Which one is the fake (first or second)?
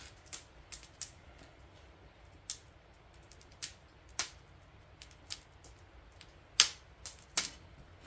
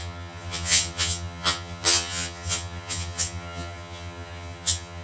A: second